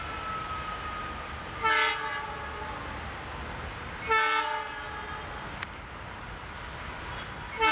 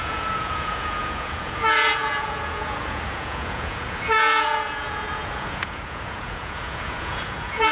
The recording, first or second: first